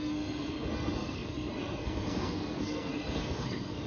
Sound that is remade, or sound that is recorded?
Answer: remade